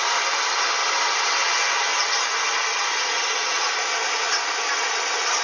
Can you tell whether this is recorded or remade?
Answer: recorded